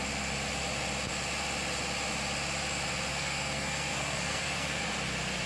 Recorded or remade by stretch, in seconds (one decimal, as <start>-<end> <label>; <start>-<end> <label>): 0.0-3.1 recorded; 3.1-4.8 remade; 4.8-5.5 recorded